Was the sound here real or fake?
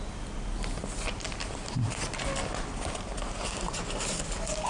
real